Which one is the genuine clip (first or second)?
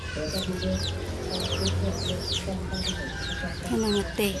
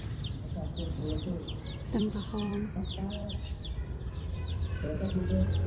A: first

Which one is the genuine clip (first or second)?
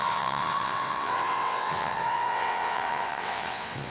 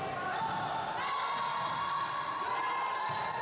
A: second